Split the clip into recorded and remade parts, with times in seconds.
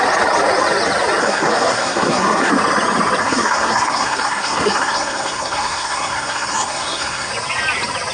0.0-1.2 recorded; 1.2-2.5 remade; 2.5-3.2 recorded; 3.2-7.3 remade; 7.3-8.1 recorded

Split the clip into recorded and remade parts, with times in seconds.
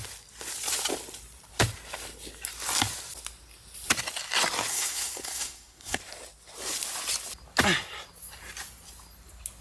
0.0-4.7 recorded; 4.7-6.0 remade; 6.0-9.6 recorded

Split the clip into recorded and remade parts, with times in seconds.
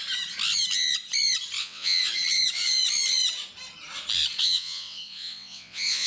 0.0-1.6 recorded; 1.6-2.0 remade; 2.0-4.4 recorded; 4.4-6.1 remade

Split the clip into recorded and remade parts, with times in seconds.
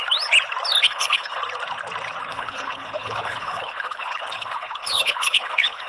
0.0-0.8 recorded; 0.8-1.4 remade; 1.4-2.3 recorded; 2.3-5.9 remade